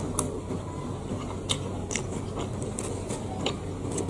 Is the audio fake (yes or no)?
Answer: no